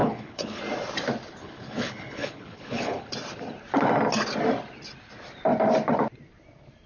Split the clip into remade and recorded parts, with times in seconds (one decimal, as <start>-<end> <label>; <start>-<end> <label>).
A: 0.0-0.6 remade; 0.6-1.4 recorded; 1.4-3.1 remade; 3.1-6.9 recorded